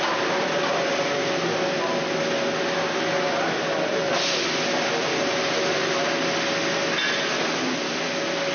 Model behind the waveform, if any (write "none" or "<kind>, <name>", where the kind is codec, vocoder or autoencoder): none